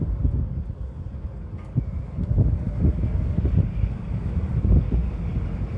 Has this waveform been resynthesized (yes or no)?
yes